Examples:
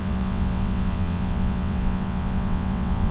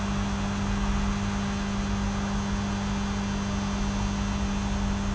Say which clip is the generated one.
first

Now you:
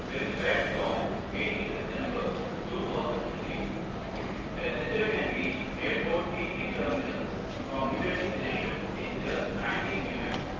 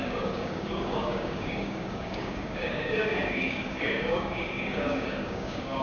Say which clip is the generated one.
second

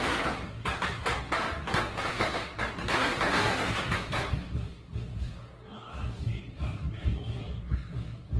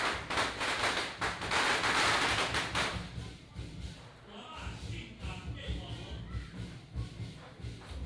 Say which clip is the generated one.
first